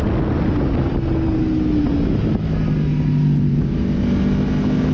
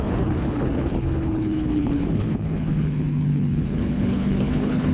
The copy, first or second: second